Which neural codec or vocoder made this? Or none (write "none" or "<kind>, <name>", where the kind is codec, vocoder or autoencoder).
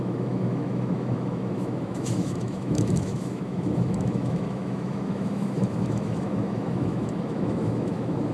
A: autoencoder, DAC-VAE